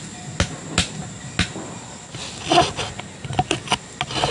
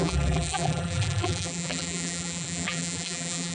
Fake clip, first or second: second